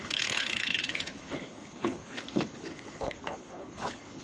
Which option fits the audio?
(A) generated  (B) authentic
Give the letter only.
A